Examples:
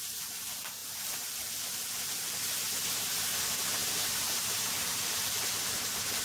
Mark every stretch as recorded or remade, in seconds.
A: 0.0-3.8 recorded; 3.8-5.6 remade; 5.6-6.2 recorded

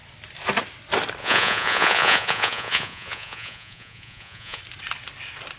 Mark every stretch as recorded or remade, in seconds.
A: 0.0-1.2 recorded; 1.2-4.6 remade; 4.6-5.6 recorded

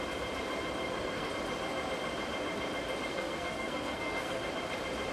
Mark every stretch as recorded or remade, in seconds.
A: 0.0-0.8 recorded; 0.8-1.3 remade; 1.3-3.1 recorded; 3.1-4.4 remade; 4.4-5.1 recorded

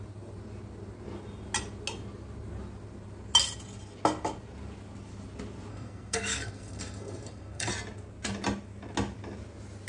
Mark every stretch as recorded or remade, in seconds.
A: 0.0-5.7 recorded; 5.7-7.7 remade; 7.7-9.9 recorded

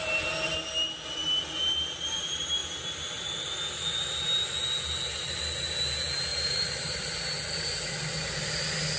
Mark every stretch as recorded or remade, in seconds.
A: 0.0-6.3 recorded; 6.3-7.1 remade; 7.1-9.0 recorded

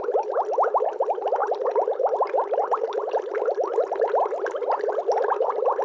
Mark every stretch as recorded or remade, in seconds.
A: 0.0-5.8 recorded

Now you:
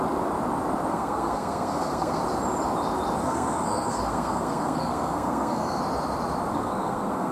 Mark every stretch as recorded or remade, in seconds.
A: 0.0-0.9 recorded; 0.9-2.2 remade; 2.2-3.2 recorded; 3.2-5.8 remade; 5.8-6.5 recorded; 6.5-7.3 remade

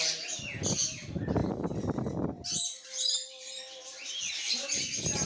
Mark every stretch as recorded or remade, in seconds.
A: 0.0-5.3 recorded